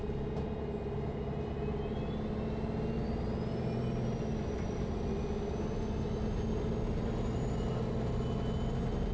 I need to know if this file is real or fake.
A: real